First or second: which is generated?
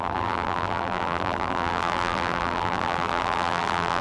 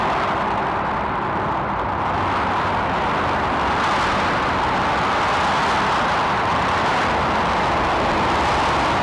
first